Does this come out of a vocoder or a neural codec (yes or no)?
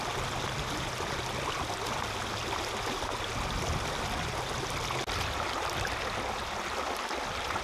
no